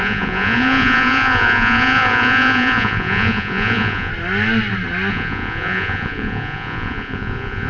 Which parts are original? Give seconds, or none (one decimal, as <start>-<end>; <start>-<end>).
4.1-5.1